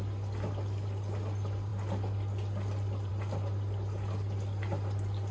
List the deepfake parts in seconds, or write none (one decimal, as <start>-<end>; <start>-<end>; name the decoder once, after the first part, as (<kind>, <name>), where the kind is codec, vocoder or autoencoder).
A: none